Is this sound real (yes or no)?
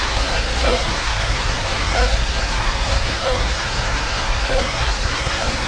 no